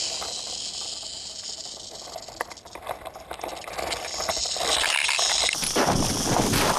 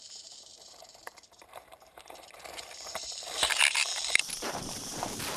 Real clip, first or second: first